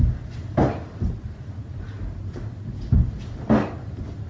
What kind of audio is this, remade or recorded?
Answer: recorded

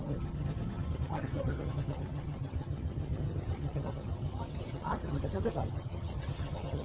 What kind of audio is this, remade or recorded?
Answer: remade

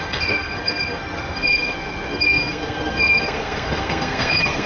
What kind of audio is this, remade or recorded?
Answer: remade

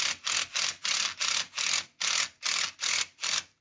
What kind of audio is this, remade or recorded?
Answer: recorded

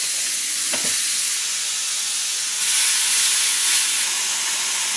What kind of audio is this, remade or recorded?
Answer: remade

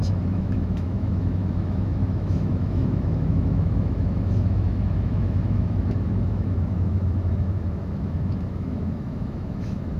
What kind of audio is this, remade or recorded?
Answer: remade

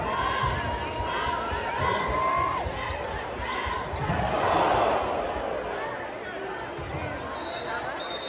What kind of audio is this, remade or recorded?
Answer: recorded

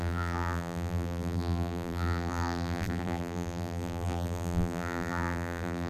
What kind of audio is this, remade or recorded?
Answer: remade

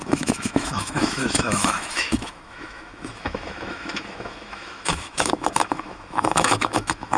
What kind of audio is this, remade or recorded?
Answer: remade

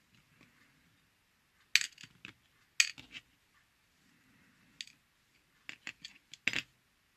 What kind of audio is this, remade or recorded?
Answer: recorded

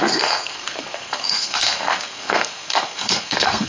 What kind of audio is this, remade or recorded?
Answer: remade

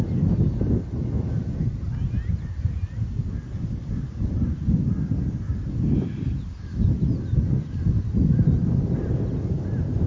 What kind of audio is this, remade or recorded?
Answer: recorded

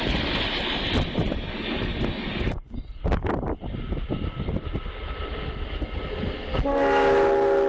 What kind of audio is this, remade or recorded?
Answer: recorded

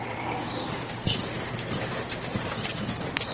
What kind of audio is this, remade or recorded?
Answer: remade